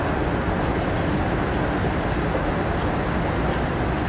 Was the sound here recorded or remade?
recorded